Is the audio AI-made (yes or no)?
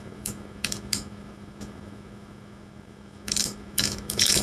yes